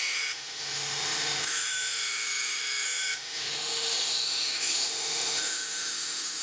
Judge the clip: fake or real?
fake